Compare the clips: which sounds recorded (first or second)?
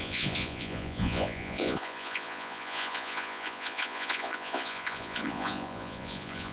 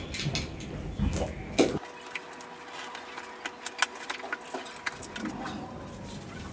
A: second